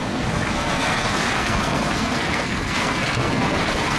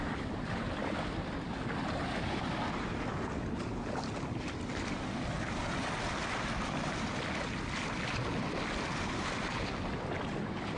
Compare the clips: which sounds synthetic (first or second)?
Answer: first